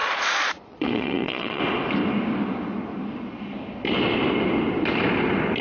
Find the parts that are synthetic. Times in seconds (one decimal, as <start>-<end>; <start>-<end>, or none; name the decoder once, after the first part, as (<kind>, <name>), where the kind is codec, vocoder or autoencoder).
0.0-1.6 (vocoder, Vocos)